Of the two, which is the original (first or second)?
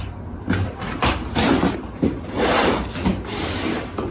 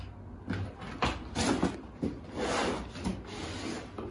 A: second